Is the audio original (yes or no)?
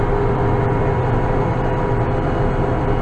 yes